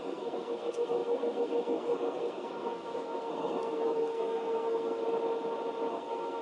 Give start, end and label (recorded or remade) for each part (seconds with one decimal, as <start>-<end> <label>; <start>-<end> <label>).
0.0-5.0 remade; 5.0-5.9 recorded; 5.9-6.4 remade